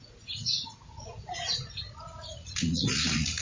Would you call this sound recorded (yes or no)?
no